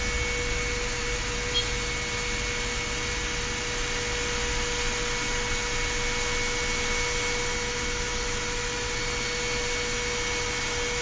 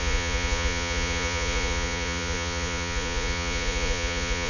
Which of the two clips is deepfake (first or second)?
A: second